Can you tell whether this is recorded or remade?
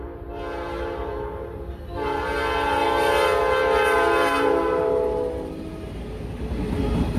recorded